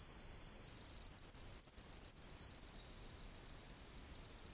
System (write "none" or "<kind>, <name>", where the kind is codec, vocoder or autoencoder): none